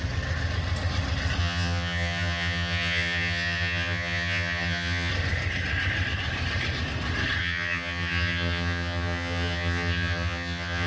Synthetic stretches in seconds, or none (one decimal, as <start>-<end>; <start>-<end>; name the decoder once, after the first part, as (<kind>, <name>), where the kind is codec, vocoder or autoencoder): 1.4-5.1 (vocoder, HiFi-GAN); 7.4-10.9